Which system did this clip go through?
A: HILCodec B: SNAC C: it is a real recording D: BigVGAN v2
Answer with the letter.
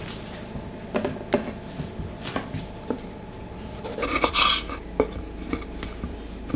C